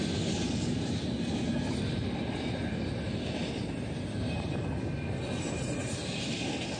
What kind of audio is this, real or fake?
real